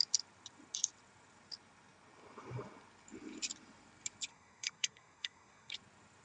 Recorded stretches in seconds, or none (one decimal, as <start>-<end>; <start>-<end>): 0.0-4.3; 5.7-6.2